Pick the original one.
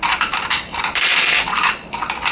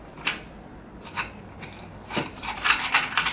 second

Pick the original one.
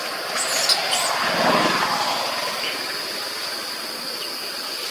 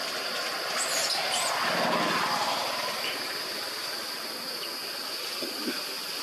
second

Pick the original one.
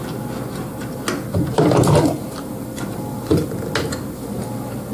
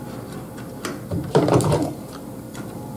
first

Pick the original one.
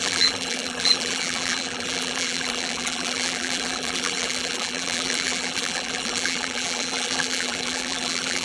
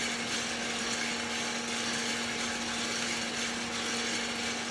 second